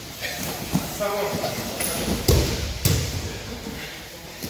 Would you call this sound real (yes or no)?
yes